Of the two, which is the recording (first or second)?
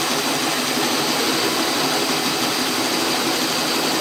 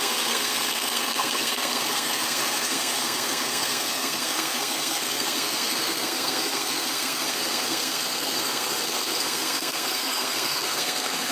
first